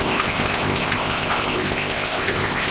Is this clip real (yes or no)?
no